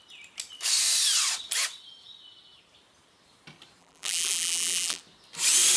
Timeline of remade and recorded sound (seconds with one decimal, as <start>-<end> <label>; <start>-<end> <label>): 0.0-3.8 recorded; 3.8-5.0 remade; 5.0-5.8 recorded